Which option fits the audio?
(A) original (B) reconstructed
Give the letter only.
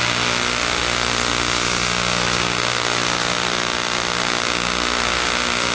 A